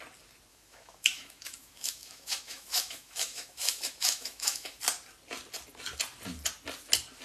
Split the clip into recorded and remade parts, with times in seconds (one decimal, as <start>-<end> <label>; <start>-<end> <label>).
0.0-0.5 recorded; 0.5-4.8 remade; 4.8-7.2 recorded